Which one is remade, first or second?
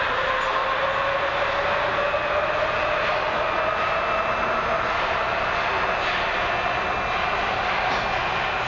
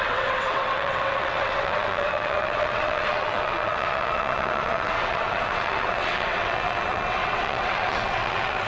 second